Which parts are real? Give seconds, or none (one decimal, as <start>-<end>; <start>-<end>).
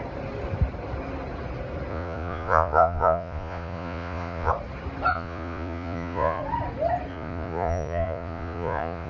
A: 0.0-1.9; 4.5-5.1; 6.4-7.1